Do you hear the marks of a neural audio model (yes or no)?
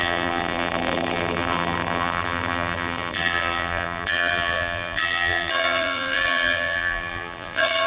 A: yes